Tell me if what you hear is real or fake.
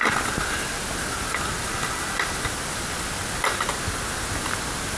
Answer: real